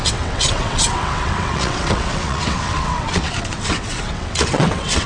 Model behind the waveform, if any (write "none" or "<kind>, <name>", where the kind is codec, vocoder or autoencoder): vocoder, WaveNeXt